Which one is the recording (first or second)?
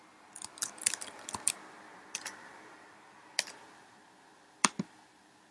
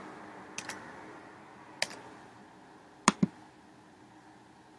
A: second